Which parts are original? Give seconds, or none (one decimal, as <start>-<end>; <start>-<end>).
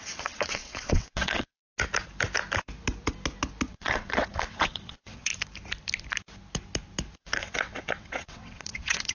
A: 1.5-3.7; 5.3-7.2